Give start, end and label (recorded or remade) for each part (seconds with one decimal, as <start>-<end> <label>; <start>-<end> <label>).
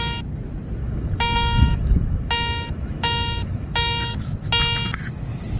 0.0-0.8 recorded; 0.8-4.2 remade; 4.2-5.6 recorded